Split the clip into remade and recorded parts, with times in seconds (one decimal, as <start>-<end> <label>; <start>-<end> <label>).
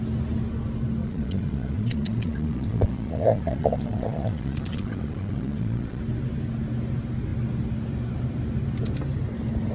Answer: 0.0-1.0 recorded; 1.0-6.0 remade; 6.0-9.7 recorded